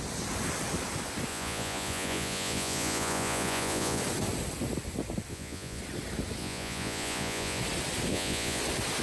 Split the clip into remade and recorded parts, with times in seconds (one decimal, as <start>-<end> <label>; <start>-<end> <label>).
0.0-1.3 recorded; 1.3-4.0 remade; 4.0-5.3 recorded; 5.3-5.8 remade; 5.8-6.4 recorded; 6.4-7.6 remade; 7.6-8.1 recorded; 8.1-8.6 remade; 8.6-9.0 recorded